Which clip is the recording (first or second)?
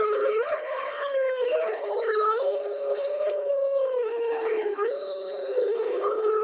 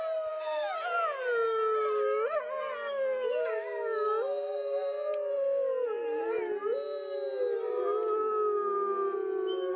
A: second